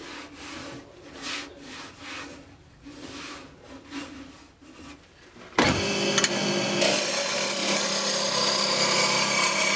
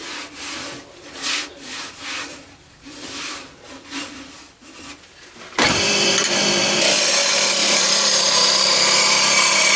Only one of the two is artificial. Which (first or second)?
second